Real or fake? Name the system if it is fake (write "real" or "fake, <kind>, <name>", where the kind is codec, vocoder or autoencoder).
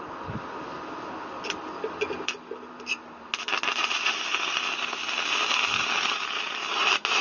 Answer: real